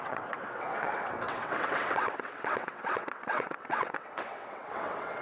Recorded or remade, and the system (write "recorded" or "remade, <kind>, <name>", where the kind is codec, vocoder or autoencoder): remade, vocoder, WaveNeXt